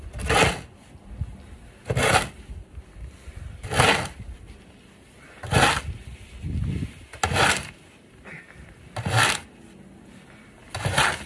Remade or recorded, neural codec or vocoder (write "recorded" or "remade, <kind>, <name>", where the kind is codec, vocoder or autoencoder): recorded